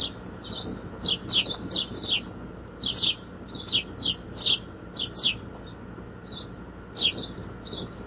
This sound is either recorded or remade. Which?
recorded